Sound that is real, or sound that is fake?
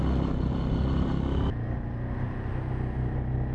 real